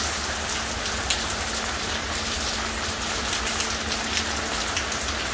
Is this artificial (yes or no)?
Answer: no